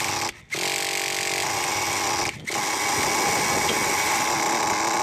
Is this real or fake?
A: real